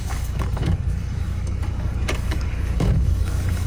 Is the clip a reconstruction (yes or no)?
yes